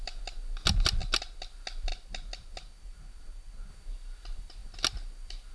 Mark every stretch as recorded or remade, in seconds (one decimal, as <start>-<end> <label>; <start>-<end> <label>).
0.0-5.5 recorded